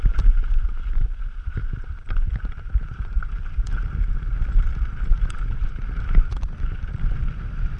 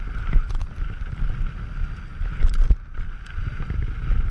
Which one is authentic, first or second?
second